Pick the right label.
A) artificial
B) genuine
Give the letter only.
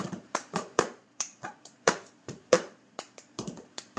A